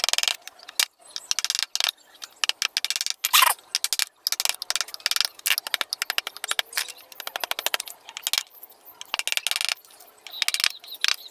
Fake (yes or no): no